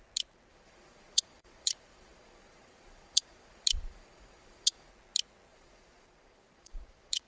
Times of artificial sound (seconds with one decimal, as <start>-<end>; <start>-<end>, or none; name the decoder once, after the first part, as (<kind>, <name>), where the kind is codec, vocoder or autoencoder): 0.5-4.9 (vocoder, Vocos); 5.5-7.3